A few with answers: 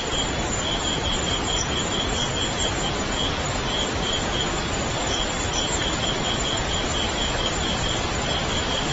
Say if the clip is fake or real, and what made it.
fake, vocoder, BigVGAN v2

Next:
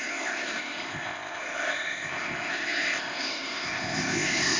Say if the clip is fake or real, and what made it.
fake, codec, ZipCodec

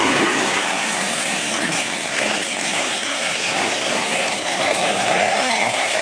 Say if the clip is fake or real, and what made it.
fake, codec, SNAC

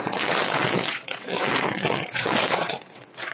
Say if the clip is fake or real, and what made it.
fake, vocoder, WaveNeXt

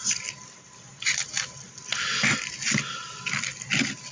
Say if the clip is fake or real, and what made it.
real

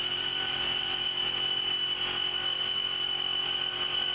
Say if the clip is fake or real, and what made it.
real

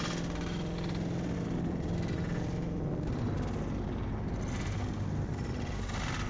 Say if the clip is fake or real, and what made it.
real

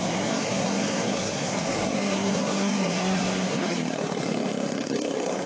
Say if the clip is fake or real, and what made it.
fake, codec, SNAC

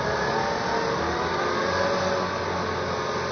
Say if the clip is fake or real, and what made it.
real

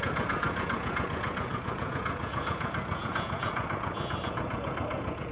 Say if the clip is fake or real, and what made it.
fake, vocoder, Vocos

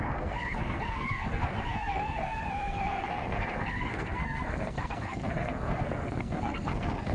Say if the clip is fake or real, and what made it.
fake, codec, SNAC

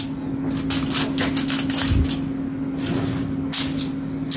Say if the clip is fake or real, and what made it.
real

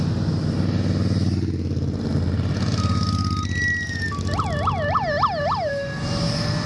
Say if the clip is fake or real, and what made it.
real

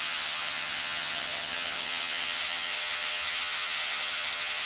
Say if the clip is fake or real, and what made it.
fake, vocoder, HiFi-GAN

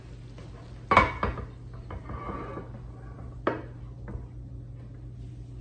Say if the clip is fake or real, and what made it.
real